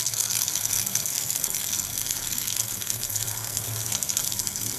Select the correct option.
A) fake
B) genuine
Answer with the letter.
A